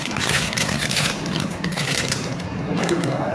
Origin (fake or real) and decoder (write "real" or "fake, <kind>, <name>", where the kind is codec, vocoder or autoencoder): fake, codec, SNAC